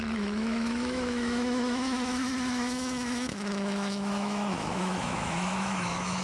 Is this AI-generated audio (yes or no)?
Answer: yes